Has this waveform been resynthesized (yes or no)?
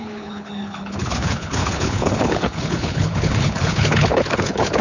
yes